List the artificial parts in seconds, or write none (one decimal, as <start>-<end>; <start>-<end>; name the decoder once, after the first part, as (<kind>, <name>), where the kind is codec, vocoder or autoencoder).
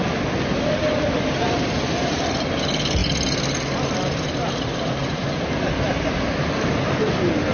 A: none